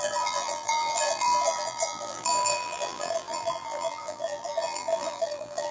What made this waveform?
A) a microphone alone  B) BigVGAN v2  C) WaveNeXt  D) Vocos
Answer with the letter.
B